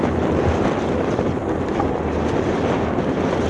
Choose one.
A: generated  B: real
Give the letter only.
B